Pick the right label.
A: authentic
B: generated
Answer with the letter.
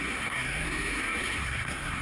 B